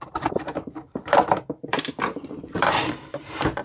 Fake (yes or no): yes